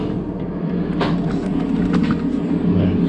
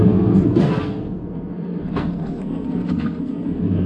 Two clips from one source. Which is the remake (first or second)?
second